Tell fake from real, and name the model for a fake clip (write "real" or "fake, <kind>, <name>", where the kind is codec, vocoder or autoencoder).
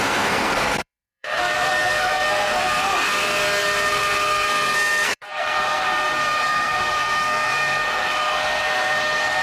fake, codec, SNAC